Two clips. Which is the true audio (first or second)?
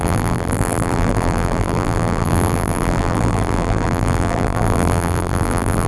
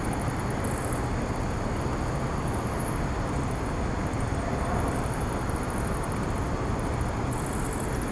second